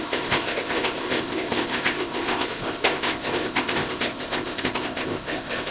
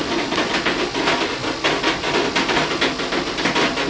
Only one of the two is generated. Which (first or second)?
first